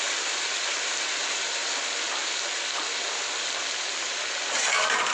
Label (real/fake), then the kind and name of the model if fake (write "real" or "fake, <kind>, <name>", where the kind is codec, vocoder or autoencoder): real